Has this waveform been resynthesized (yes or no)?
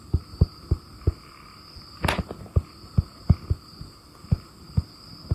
no